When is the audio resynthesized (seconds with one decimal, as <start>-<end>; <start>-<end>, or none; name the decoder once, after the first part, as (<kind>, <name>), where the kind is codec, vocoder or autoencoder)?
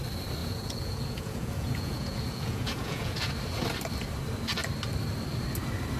0.4-3.3 (vocoder, Vocos)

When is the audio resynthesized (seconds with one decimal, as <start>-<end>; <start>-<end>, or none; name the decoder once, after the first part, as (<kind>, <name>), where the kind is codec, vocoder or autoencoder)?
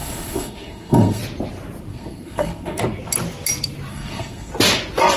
0.0-1.2 (codec, SNAC); 1.9-2.8; 3.9-4.5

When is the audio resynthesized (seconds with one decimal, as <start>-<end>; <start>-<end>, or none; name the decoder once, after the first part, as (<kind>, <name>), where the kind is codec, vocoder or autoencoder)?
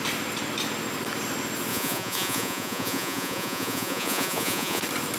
1.7-4.8 (vocoder, Vocos)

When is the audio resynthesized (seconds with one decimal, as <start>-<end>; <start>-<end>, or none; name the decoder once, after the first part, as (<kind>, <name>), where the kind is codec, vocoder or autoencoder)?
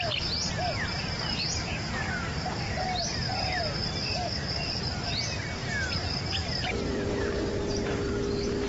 3.1-4.8 (vocoder, BigVGAN v2); 6.4-7.5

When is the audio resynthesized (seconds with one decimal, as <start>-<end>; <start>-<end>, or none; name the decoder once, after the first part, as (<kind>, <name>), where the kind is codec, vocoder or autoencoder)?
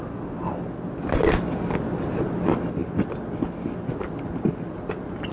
none